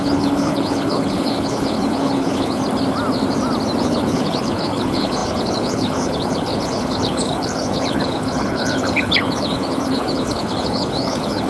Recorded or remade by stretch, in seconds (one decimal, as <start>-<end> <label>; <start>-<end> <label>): 0.0-2.6 remade; 2.6-3.8 recorded; 3.8-11.5 remade